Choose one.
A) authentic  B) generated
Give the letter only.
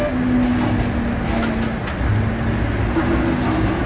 A